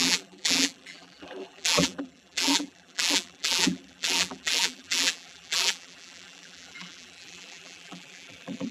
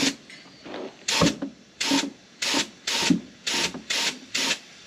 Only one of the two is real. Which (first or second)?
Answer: second